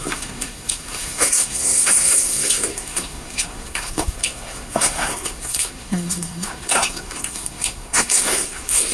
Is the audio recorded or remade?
remade